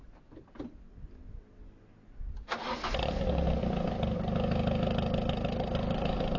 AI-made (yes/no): no